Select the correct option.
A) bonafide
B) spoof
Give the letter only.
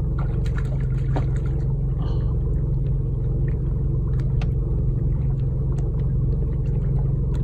A